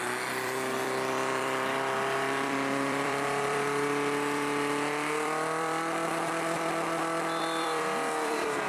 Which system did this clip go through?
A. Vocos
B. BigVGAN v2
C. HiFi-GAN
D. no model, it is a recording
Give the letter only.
B